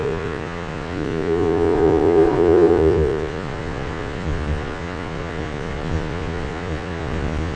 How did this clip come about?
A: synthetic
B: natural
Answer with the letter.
A